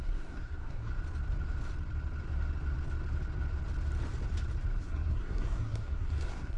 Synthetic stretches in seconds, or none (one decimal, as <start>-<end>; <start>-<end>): 0.0-0.9; 4.8-6.6